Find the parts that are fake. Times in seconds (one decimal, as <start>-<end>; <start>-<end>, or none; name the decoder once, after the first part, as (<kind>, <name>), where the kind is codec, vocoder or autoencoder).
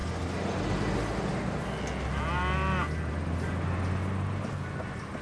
none